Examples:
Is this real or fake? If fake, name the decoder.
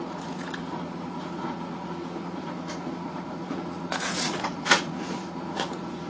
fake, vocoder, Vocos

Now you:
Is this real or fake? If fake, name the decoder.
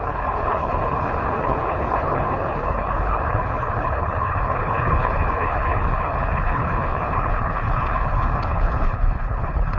fake, codec, HILCodec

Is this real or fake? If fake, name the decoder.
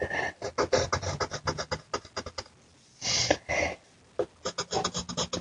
real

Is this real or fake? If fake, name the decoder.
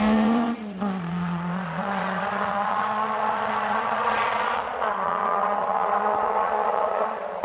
fake, vocoder, Vocos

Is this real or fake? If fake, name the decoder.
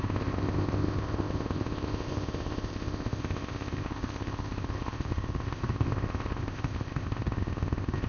fake, codec, ZipCodec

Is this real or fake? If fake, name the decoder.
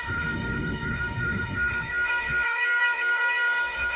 fake, autoencoder, DAC-VAE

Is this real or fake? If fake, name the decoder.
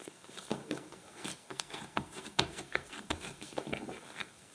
fake, codec, SNAC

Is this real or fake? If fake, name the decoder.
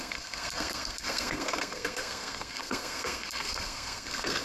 fake, codec, SNAC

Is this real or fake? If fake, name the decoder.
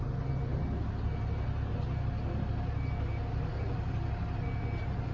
real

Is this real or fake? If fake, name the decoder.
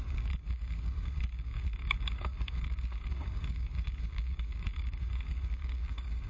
fake, codec, DAC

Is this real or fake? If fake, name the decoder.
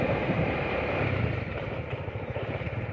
fake, vocoder, BigVGAN v2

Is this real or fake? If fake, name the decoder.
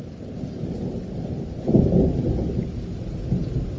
real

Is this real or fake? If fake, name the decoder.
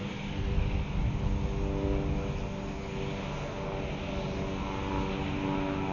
real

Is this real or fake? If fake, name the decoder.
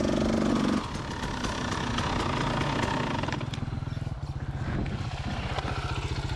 real